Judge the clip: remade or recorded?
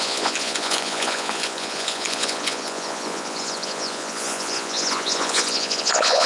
remade